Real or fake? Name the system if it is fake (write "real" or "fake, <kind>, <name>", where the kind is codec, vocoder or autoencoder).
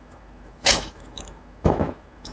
fake, autoencoder, DAC-VAE